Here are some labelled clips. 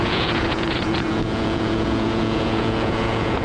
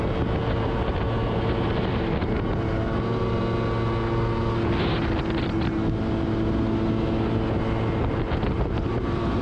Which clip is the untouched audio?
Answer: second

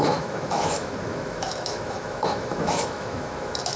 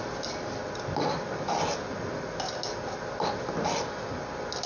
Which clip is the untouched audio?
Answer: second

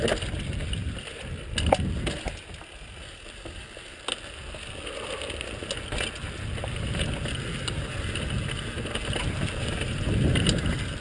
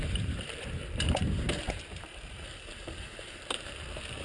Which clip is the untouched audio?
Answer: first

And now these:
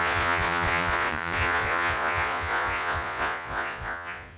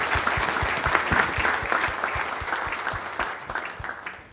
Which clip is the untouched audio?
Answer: second